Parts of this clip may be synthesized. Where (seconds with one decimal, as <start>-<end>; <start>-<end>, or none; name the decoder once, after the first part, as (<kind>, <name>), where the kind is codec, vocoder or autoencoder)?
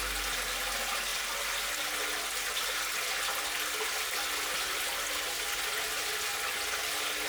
none